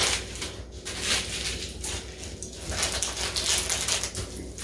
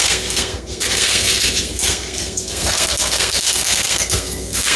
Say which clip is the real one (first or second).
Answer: first